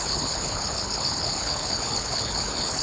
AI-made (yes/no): yes